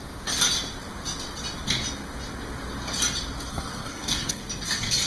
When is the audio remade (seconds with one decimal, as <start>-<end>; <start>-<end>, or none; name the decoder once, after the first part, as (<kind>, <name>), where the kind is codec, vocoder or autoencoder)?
3.5-4.4 (codec, SNAC)